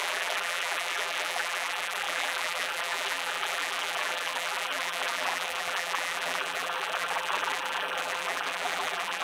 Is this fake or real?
fake